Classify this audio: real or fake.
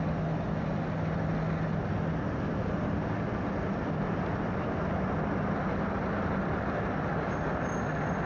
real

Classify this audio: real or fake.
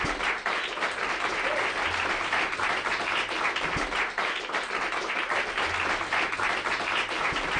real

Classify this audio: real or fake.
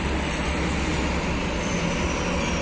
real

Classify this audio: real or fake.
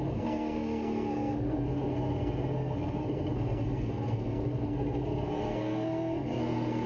fake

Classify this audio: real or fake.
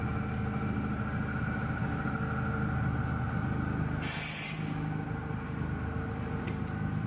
real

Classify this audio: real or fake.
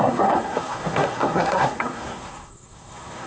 fake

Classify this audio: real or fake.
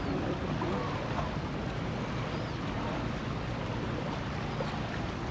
real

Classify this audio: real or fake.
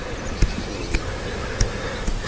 real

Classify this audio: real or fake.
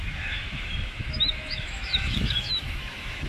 fake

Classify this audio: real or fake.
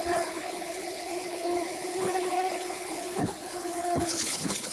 fake